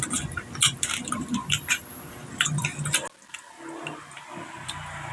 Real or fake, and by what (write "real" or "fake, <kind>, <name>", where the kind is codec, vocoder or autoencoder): real